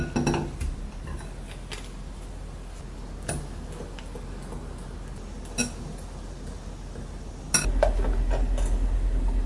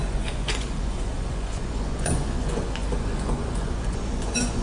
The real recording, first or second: first